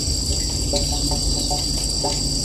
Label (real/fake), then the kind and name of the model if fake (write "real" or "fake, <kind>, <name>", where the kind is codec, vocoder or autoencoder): real